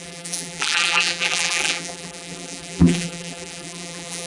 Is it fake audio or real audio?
fake